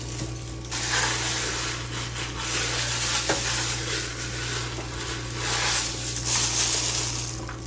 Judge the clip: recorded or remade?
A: recorded